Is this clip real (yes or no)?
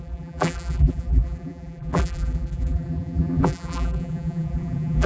no